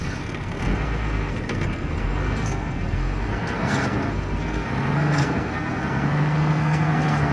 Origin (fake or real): fake